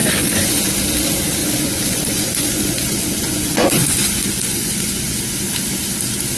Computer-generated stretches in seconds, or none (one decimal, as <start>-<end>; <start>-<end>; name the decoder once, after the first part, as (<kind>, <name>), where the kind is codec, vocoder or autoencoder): 0.0-0.6 (vocoder, Vocos); 1.4-5.2